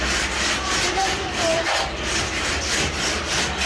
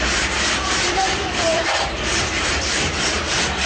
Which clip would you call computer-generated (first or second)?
second